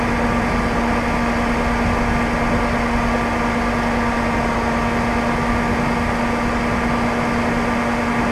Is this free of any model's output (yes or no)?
yes